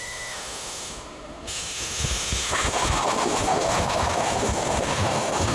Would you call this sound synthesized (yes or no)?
yes